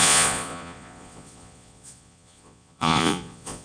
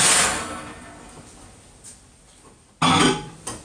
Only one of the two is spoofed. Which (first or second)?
first